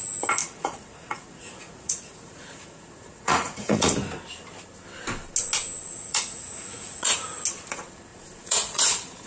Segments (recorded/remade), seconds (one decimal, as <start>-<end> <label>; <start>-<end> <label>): 0.0-0.4 recorded; 0.4-3.9 remade; 3.9-5.8 recorded; 5.8-7.4 remade; 7.4-8.1 recorded; 8.1-9.3 remade